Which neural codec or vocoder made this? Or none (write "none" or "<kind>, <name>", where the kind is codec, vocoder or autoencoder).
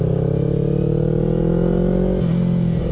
none